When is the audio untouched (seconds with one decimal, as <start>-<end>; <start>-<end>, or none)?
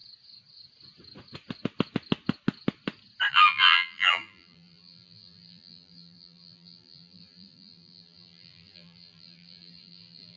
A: 0.0-3.3